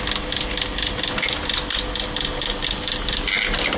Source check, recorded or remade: recorded